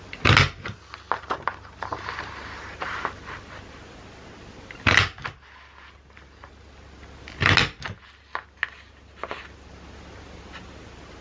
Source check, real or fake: real